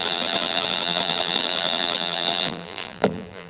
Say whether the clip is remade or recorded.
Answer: remade